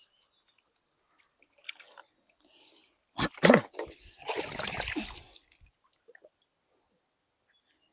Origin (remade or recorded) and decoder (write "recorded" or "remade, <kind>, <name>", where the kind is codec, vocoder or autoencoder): recorded